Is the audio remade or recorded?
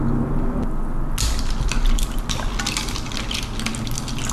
recorded